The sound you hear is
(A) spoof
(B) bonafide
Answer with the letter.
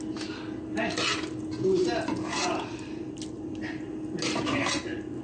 B